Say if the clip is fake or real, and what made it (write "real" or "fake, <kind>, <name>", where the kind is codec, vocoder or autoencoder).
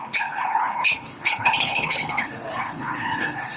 fake, codec, HILCodec